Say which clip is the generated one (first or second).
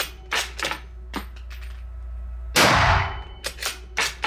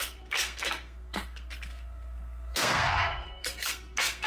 second